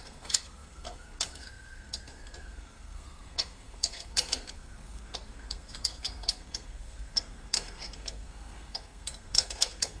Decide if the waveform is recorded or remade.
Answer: remade